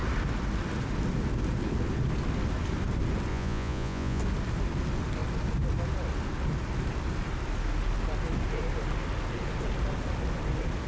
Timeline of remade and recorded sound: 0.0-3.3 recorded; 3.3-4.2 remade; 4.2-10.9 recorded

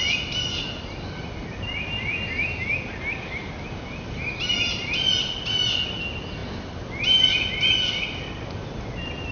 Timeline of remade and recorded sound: 0.0-9.3 recorded

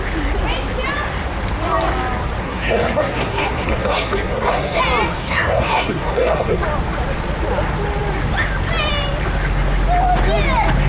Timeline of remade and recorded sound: 0.0-2.4 recorded; 2.4-4.8 remade; 4.8-5.2 recorded; 5.2-6.6 remade; 6.6-10.9 recorded

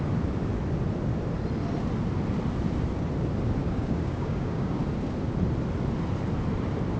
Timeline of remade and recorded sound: 0.0-3.6 recorded; 3.6-4.8 remade; 4.8-7.0 recorded

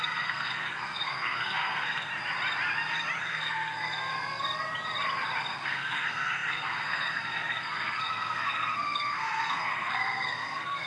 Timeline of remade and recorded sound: 0.0-2.1 remade; 2.1-3.2 recorded; 3.2-4.1 remade; 4.1-5.5 recorded; 5.5-10.9 remade

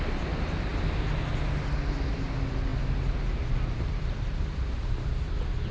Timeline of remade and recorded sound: 0.0-5.7 recorded

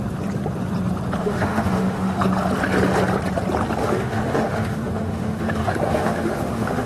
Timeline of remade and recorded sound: 0.0-1.2 recorded; 1.2-2.2 remade; 2.2-3.8 recorded; 3.8-6.9 remade

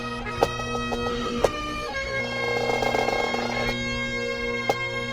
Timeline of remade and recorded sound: 0.0-1.1 recorded; 1.1-2.2 remade; 2.2-5.1 recorded